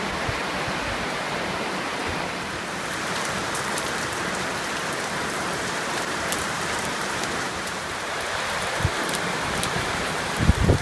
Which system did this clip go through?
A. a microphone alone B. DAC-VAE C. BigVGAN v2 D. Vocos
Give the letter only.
C